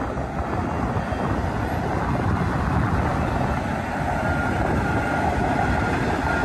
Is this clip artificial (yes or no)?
no